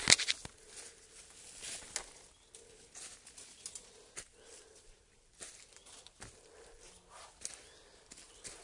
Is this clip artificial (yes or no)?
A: no